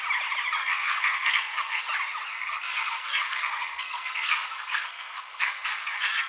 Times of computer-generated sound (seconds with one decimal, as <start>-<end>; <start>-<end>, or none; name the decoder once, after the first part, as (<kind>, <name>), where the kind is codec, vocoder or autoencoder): 0.6-1.8 (codec, SNAC); 2.3-6.3